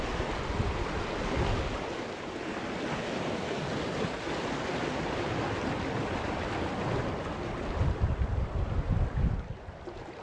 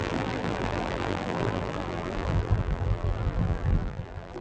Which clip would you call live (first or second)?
first